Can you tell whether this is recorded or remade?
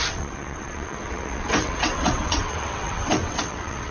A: remade